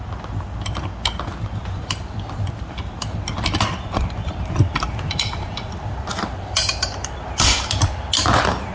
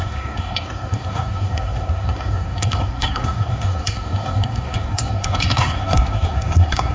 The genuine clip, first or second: first